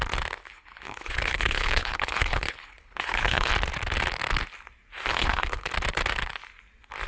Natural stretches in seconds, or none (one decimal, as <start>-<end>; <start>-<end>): 0.0-0.4; 3.5-5.1; 5.7-7.1